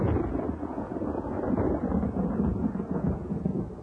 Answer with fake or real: real